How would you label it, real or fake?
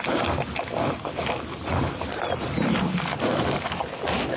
real